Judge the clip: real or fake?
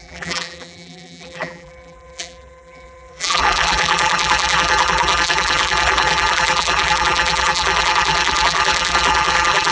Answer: fake